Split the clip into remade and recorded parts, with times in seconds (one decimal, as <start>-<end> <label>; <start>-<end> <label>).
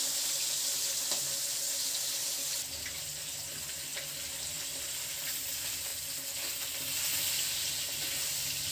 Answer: 0.0-3.9 remade; 3.9-5.5 recorded; 5.5-5.9 remade; 5.9-8.0 recorded; 8.0-8.7 remade